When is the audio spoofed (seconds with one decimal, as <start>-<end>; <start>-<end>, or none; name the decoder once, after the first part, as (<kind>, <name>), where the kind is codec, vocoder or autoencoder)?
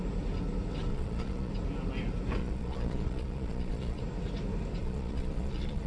0.9-1.5 (vocoder, Vocos); 2.4-4.0; 4.8-5.9